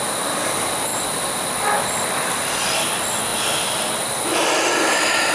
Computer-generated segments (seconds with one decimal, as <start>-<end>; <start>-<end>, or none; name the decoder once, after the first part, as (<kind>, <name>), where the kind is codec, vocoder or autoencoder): none